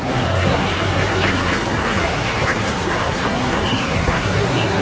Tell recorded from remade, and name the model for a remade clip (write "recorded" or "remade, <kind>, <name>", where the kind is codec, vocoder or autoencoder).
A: remade, codec, SNAC